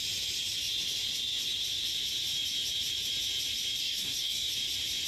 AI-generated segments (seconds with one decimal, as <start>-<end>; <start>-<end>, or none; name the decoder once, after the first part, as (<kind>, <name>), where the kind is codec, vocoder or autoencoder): 3.8-4.5 (codec, DAC)